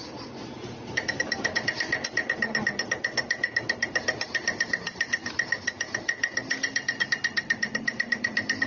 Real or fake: real